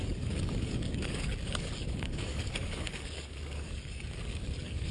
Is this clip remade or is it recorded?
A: remade